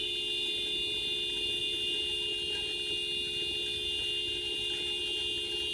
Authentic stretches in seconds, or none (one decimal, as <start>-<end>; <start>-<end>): 0.0-5.7